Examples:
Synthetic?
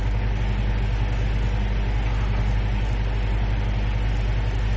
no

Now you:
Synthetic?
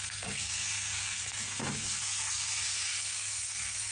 yes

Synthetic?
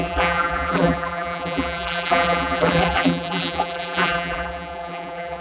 yes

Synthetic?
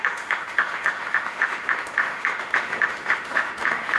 yes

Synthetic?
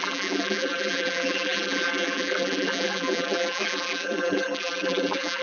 yes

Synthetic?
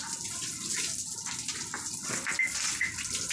no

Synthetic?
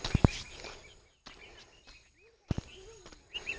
no